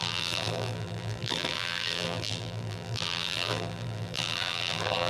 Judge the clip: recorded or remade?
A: remade